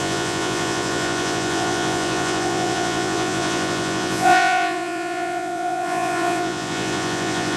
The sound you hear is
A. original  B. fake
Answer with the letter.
B